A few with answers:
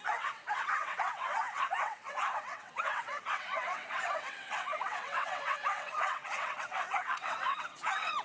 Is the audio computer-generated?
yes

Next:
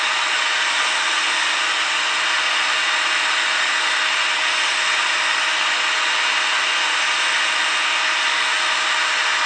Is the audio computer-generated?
no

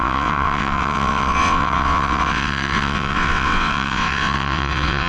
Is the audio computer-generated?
yes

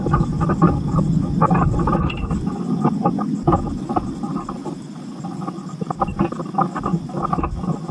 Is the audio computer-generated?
no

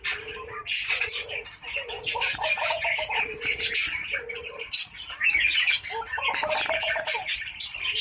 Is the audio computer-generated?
no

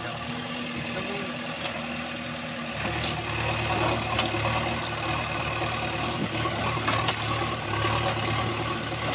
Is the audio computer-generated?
no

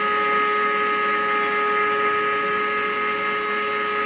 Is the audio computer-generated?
no